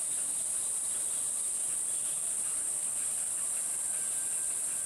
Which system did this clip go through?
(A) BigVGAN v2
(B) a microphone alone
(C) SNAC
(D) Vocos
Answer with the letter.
B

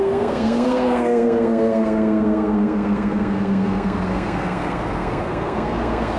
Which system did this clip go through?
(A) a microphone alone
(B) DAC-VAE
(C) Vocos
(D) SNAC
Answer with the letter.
D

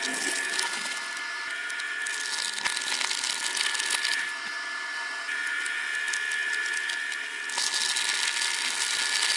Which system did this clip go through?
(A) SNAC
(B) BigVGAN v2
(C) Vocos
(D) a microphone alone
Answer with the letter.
D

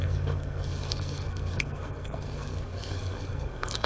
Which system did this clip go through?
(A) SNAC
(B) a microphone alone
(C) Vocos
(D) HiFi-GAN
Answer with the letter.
A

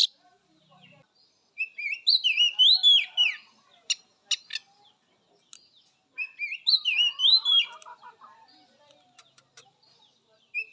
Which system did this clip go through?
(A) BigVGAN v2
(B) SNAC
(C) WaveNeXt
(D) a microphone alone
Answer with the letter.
D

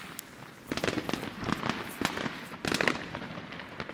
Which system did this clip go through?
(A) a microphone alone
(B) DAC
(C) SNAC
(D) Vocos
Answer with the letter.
A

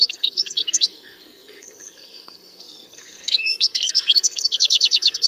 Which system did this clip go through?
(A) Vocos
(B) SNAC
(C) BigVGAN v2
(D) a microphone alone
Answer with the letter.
B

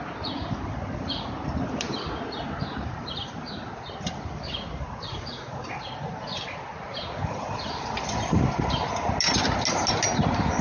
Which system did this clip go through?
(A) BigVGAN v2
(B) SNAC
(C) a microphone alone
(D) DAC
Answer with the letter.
C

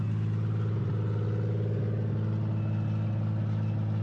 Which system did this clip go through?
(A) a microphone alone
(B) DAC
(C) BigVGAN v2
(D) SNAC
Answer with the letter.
A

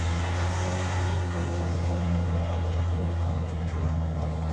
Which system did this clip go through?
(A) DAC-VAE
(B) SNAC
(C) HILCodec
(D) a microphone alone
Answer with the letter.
B